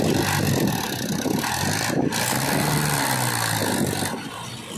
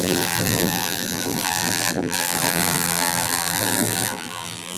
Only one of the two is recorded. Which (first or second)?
first